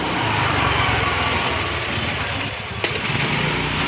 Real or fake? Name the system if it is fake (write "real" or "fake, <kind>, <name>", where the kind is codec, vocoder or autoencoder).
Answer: real